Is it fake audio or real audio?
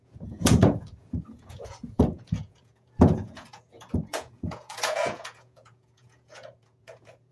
fake